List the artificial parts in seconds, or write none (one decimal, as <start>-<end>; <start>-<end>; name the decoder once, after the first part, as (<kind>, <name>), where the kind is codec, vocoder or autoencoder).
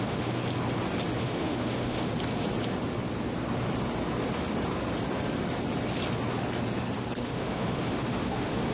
0.0-0.4 (autoencoder, DAC-VAE); 1.2-2.1; 7.2-8.7